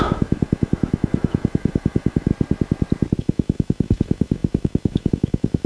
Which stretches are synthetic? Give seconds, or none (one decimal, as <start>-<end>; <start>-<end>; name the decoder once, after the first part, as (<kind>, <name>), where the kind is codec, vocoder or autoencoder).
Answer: 0.0-2.3 (autoencoder, DAC-VAE); 3.2-5.7